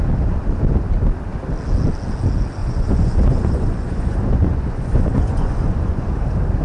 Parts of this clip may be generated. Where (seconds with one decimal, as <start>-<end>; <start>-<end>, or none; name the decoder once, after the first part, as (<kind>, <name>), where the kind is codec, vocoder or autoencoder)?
2.6-6.1 (vocoder, Vocos)